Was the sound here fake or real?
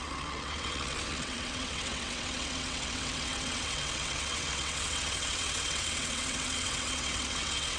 fake